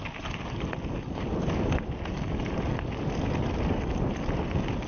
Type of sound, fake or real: real